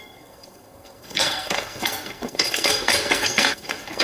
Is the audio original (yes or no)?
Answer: no